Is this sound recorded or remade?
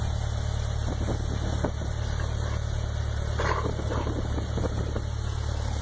recorded